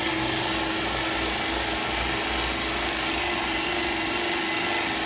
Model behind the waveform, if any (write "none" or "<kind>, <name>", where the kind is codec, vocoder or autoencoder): none